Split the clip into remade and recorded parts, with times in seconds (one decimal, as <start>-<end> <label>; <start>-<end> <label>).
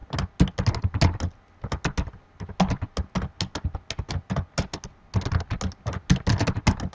0.0-6.9 recorded